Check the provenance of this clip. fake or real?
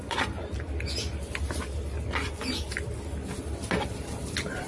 real